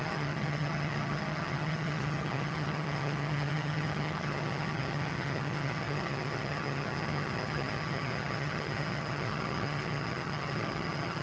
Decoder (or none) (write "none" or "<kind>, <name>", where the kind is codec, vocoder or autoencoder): vocoder, HiFi-GAN